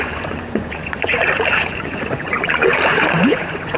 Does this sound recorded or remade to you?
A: remade